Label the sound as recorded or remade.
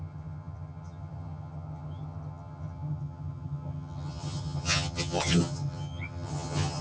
remade